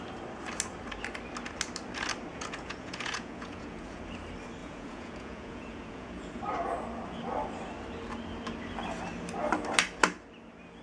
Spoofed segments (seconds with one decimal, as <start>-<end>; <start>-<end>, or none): 2.3-4.0; 4.6-6.4